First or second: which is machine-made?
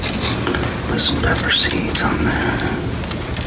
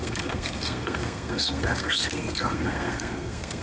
second